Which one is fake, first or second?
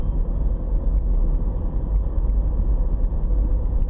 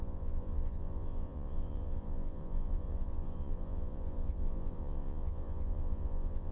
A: second